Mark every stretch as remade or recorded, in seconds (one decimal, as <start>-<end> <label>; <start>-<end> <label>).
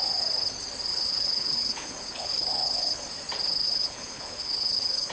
0.0-0.9 recorded; 0.9-3.0 remade; 3.0-3.6 recorded; 3.6-5.1 remade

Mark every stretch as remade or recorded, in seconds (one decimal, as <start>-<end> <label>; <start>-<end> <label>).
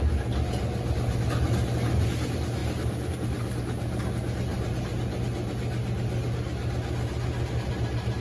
0.0-8.2 recorded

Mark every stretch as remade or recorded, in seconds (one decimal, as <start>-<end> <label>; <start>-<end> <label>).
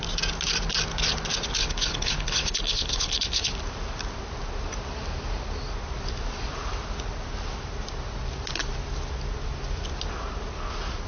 0.0-1.6 recorded; 1.6-3.5 remade; 3.5-11.1 recorded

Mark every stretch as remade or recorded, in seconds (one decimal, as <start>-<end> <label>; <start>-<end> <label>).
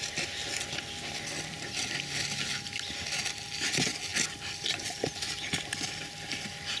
0.0-6.8 recorded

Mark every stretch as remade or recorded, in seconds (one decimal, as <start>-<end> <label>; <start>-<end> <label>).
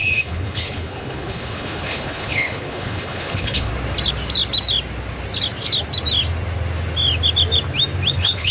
0.0-3.7 remade; 3.7-8.1 recorded; 8.1-8.5 remade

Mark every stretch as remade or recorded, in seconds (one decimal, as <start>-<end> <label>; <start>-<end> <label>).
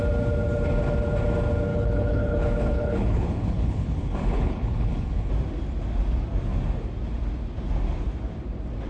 0.0-1.7 recorded; 1.7-5.3 remade; 5.3-8.9 recorded